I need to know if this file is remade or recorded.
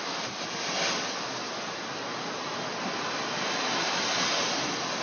recorded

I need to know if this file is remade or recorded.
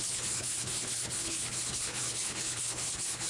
remade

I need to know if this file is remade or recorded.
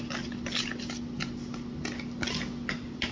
recorded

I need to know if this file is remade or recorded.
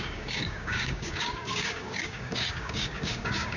remade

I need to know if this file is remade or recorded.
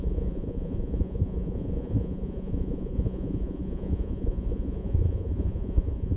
remade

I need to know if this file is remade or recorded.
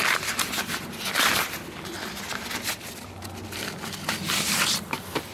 recorded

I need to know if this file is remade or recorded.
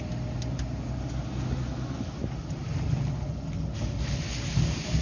recorded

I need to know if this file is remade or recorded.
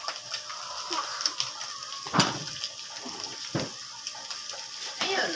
recorded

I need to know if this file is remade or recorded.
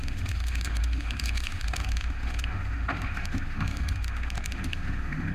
remade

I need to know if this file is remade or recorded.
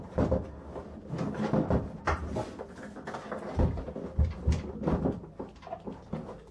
recorded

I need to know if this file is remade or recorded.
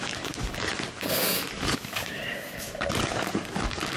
remade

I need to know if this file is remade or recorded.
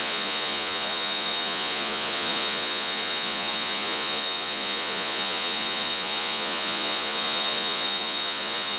remade